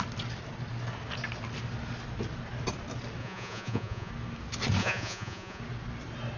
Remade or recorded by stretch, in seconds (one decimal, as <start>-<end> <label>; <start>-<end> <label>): 0.0-3.2 recorded; 3.2-4.1 remade; 4.1-4.8 recorded; 4.8-5.6 remade; 5.6-6.4 recorded